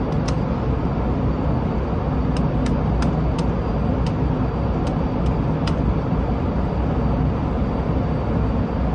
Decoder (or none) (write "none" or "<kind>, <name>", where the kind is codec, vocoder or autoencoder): none